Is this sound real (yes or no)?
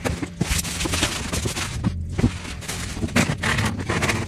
yes